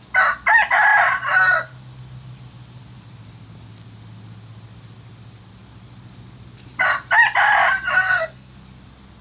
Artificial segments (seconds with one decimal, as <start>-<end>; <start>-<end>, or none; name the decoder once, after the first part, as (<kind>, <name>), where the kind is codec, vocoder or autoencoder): 8.0-8.5 (codec, SNAC)

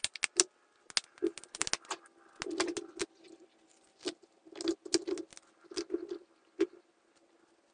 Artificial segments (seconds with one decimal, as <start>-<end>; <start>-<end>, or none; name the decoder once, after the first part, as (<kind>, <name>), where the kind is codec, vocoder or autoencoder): none

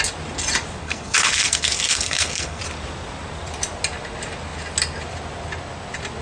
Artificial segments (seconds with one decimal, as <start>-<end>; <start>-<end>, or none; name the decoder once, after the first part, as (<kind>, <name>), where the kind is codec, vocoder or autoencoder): 0.8-2.6 (codec, SNAC)

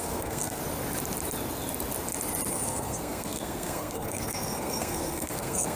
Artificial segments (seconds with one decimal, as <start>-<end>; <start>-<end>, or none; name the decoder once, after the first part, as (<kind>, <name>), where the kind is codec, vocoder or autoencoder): 0.0-0.6 (codec, SNAC); 2.5-5.8

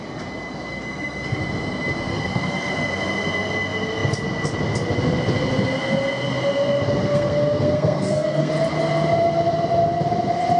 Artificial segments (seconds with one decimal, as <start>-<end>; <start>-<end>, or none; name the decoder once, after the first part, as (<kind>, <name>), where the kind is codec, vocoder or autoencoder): 0.7-1.4 (codec, SNAC); 2.1-2.7; 7.0-8.5